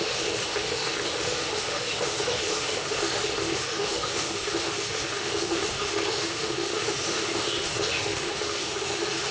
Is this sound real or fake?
fake